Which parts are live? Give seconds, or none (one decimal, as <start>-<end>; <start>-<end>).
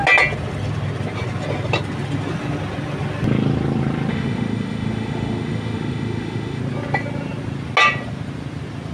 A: 0.0-4.1; 6.6-8.9